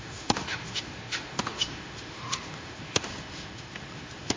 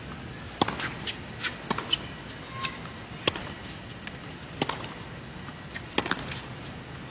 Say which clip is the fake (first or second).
first